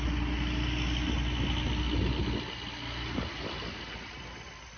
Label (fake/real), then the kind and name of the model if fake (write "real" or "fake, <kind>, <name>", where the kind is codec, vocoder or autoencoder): real